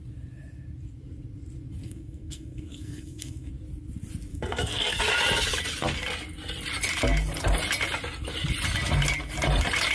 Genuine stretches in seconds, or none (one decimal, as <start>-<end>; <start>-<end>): 0.0-1.8; 3.5-4.3; 5.0-9.9